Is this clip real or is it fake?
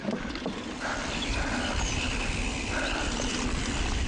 real